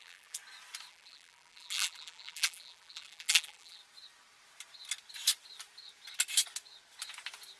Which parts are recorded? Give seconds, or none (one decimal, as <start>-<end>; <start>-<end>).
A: 0.4-0.9; 3.8-7.6